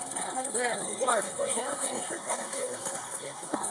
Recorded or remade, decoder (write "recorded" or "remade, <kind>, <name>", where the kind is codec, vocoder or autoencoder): remade, codec, SNAC